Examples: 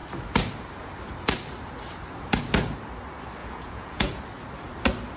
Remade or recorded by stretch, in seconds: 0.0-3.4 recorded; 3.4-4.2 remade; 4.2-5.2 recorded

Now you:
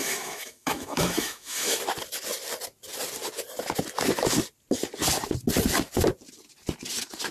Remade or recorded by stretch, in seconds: 0.0-1.8 remade; 1.8-7.3 recorded

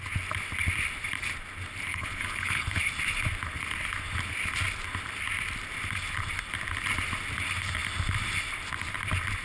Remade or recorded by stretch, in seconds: 0.0-1.9 recorded; 1.9-2.8 remade; 2.8-9.4 recorded

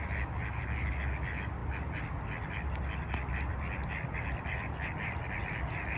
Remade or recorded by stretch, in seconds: 0.0-6.0 recorded

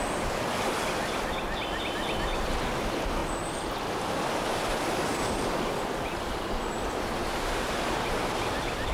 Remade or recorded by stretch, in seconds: 0.0-3.2 recorded; 3.2-3.7 remade; 3.7-5.1 recorded; 5.1-6.0 remade; 6.0-8.9 recorded

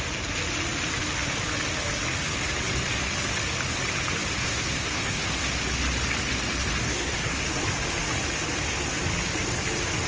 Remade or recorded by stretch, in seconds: 0.0-4.4 recorded; 4.4-5.5 remade; 5.5-6.8 recorded; 6.8-7.4 remade; 7.4-10.1 recorded